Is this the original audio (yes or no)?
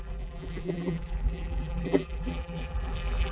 no